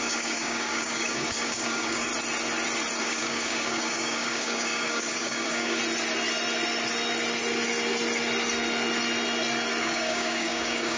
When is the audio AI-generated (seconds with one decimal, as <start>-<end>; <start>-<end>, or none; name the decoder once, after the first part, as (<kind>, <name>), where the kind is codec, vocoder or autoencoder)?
0.0-2.1 (codec, DAC); 3.0-5.8; 9.8-11.0

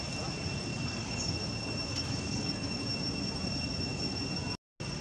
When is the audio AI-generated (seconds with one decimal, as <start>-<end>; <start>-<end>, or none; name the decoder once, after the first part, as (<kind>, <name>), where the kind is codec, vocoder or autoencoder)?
0.7-1.3 (codec, DAC); 1.9-2.8